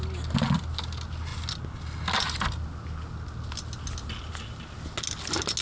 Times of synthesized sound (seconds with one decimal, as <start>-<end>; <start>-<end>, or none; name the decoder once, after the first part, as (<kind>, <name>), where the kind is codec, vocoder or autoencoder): none